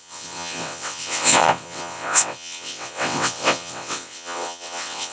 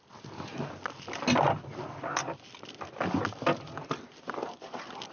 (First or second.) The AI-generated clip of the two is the first